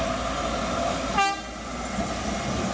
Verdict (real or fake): real